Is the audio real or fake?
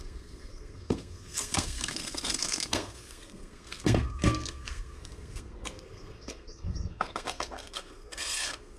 fake